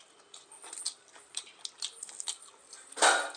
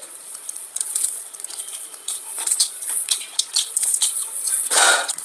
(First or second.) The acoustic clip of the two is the first